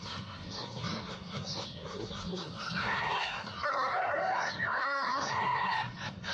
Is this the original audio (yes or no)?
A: no